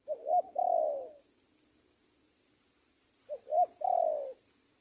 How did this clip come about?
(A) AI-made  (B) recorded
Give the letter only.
B